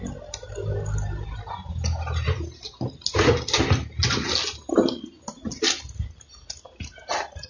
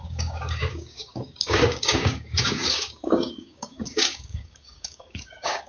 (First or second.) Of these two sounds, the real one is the first